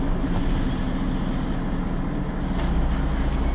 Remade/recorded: recorded